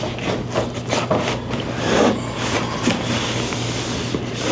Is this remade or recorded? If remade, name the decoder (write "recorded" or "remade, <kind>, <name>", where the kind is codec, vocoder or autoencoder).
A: recorded